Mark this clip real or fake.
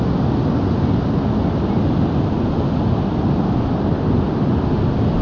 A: real